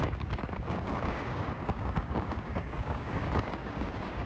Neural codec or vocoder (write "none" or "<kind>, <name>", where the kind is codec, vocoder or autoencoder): codec, DAC